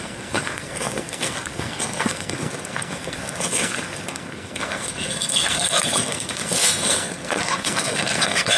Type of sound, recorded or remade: remade